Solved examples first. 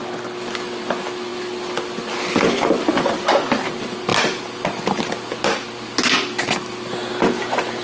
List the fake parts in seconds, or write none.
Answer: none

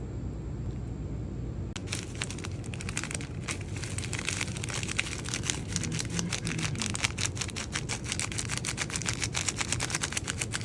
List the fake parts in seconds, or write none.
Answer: none

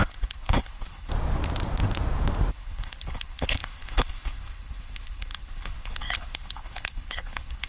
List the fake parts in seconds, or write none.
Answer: 0.0-1.1; 2.5-7.7